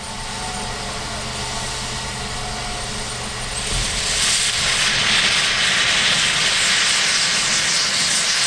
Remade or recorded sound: recorded